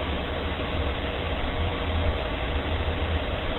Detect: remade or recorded remade